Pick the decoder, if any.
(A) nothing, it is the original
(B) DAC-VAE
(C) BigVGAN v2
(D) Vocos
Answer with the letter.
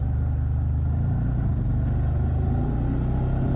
A